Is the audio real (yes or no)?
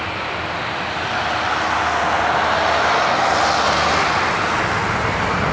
yes